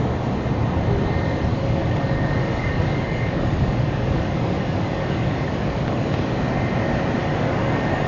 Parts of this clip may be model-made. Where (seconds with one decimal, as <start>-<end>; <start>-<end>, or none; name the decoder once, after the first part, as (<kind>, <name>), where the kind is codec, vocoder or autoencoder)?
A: 1.5-6.4 (codec, DAC); 7.2-8.1